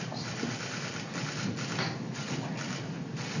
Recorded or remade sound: recorded